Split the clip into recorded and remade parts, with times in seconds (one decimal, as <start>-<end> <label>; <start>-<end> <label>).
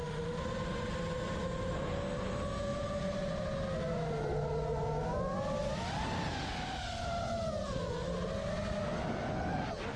0.0-0.9 remade; 0.9-2.7 recorded; 2.7-3.5 remade; 3.5-10.0 recorded